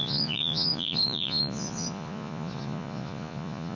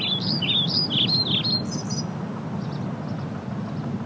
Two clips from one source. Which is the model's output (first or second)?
first